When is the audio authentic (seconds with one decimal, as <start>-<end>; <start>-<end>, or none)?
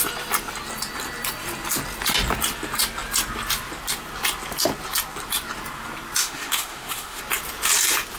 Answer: 0.0-6.2; 7.2-8.2